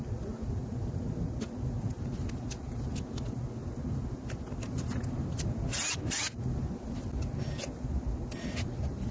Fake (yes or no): no